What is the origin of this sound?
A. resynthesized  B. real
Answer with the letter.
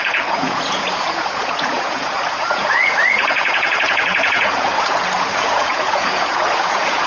A